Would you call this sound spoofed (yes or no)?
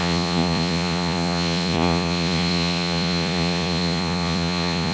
yes